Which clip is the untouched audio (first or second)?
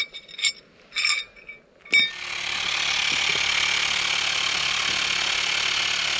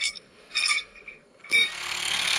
first